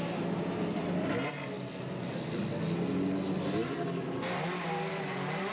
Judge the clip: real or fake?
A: real